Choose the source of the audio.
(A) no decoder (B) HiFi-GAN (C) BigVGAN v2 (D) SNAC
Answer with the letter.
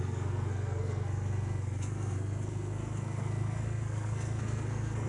D